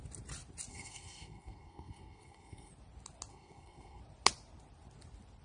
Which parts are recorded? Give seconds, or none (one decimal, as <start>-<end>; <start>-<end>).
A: 0.0-0.7; 2.7-3.3; 4.0-5.4